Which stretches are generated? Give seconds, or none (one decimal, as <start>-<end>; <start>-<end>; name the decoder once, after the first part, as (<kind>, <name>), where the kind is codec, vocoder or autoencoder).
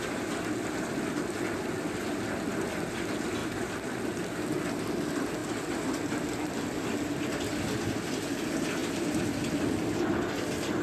3.4-3.9 (vocoder, BigVGAN v2)